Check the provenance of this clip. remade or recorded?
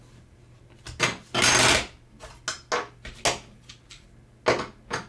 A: recorded